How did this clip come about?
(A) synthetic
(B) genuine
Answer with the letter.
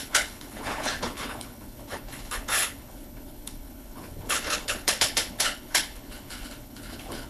A